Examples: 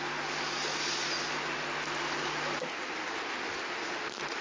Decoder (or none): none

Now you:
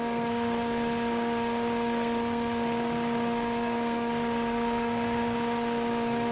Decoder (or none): codec, SNAC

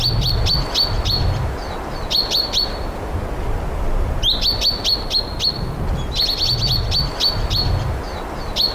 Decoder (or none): none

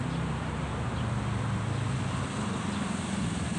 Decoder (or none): none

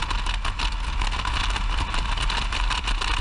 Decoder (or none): none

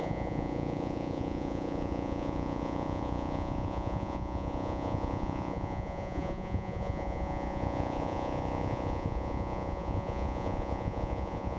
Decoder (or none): vocoder, Vocos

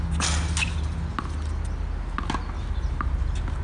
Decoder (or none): none